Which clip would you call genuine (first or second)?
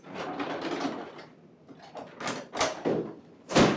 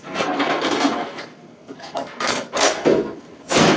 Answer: first